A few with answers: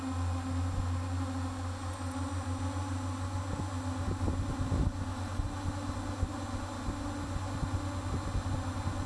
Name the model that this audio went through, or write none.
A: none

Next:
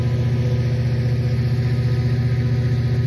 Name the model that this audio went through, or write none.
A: none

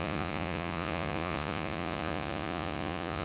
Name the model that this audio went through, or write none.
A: vocoder, Vocos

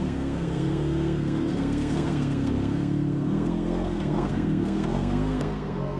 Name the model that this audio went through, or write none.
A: codec, SNAC